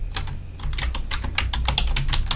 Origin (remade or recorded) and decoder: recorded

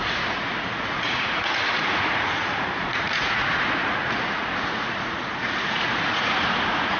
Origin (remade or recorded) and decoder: remade, vocoder, Vocos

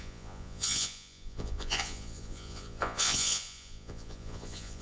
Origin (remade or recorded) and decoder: remade, vocoder, Vocos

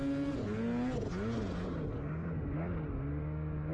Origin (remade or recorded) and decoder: recorded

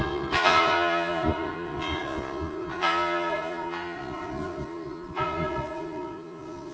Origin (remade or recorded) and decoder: remade, vocoder, Vocos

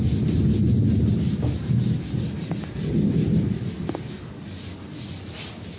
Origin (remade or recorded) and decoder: recorded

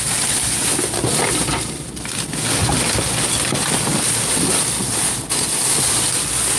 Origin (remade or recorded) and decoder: recorded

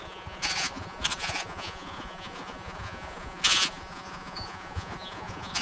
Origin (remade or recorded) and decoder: remade, vocoder, Vocos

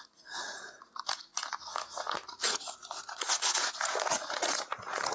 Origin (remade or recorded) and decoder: remade, vocoder, Vocos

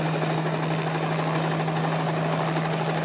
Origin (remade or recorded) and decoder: recorded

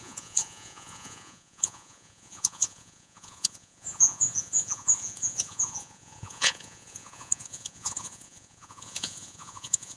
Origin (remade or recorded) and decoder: remade, vocoder, Vocos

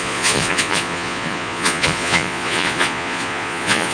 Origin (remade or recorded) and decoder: remade, vocoder, Vocos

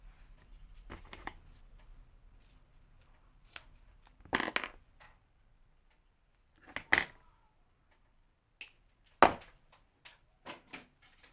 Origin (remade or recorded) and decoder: recorded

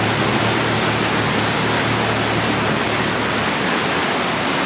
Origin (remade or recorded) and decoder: recorded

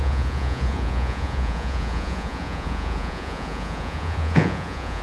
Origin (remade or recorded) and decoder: remade, vocoder, Vocos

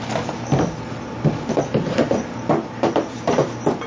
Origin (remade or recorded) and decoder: recorded